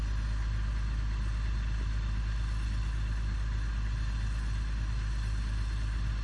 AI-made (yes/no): no